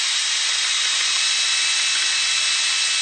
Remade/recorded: recorded